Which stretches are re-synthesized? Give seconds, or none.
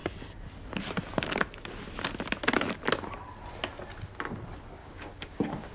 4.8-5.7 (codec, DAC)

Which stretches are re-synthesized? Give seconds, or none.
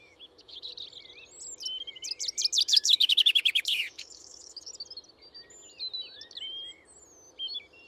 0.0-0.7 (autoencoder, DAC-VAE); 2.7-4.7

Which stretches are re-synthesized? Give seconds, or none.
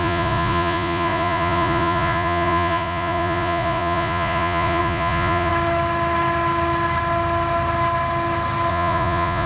0.0-5.5 (vocoder, Vocos); 8.7-9.5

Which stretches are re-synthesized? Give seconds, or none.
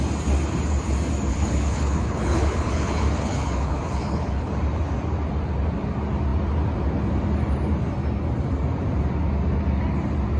1.3-4.5 (codec, HILCodec)